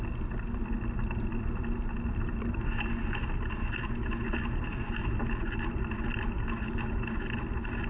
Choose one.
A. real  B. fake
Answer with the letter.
A